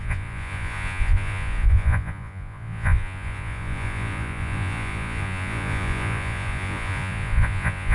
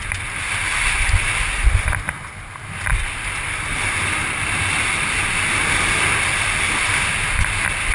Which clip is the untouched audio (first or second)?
second